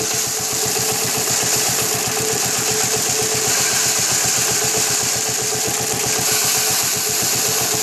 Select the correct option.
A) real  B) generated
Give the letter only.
A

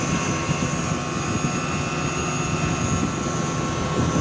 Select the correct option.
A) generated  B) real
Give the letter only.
B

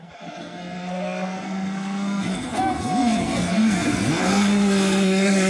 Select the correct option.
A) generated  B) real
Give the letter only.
A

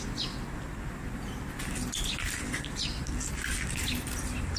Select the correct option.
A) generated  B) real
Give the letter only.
B